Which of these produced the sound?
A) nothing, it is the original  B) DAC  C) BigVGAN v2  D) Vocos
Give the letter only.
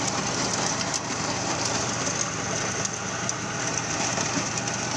C